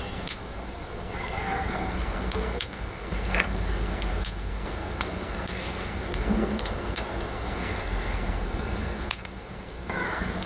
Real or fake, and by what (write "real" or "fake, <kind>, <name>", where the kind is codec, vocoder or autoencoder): fake, codec, SNAC